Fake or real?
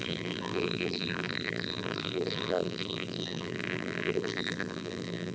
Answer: fake